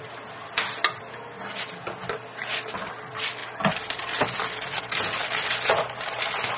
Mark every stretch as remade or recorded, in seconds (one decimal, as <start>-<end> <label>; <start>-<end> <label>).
0.0-6.6 recorded